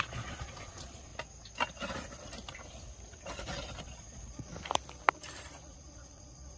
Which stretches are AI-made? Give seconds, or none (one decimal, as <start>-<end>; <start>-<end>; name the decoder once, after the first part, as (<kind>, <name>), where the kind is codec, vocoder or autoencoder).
0.0-1.1 (vocoder, Vocos); 3.8-4.5; 5.5-6.6